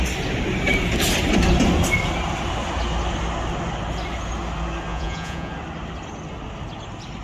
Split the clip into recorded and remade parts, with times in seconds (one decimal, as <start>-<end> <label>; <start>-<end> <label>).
0.0-4.9 recorded; 4.9-5.5 remade; 5.5-7.2 recorded